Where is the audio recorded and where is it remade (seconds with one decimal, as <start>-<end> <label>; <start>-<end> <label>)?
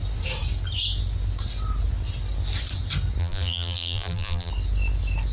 0.0-3.2 recorded; 3.2-4.5 remade; 4.5-5.3 recorded